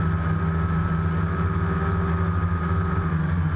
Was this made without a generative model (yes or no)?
yes